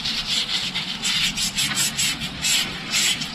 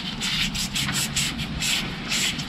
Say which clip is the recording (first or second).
second